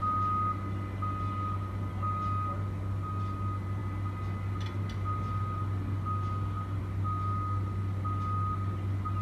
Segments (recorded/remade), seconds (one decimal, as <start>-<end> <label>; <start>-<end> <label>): 0.0-9.2 recorded